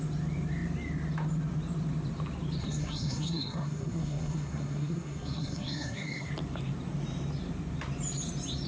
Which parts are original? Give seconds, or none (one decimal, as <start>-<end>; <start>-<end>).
0.0-2.6; 6.3-8.7